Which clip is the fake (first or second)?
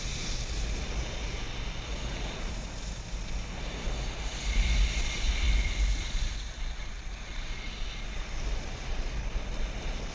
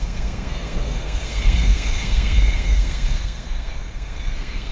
second